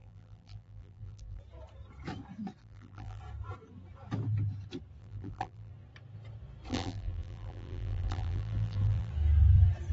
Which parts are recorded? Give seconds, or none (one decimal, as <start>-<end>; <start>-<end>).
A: 1.4-2.6; 3.2-5.0; 5.7-6.7; 9.1-9.9